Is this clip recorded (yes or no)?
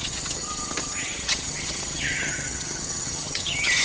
no